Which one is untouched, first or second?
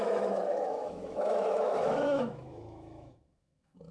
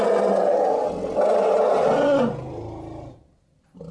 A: second